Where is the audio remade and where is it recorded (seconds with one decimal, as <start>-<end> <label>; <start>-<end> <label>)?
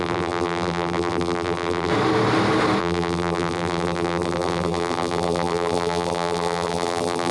0.0-1.9 remade; 1.9-2.8 recorded; 2.8-7.3 remade